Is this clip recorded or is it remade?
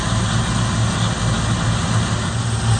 recorded